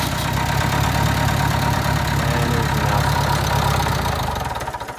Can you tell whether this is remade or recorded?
recorded